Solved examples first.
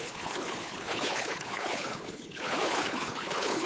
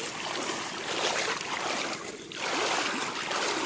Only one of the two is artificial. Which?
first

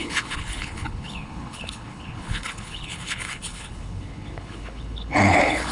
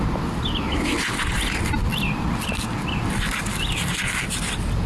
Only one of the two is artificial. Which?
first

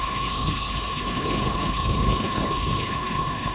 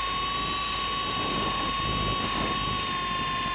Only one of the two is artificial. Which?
first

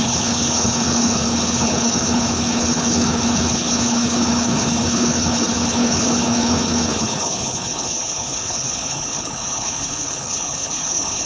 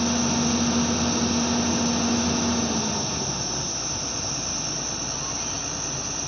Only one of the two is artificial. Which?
first